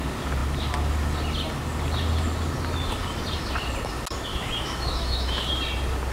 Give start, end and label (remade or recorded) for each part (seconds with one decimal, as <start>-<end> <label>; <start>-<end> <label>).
0.0-4.3 recorded; 4.3-5.5 remade; 5.5-6.1 recorded